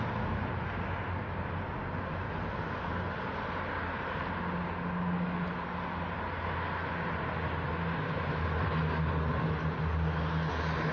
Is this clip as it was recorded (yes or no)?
yes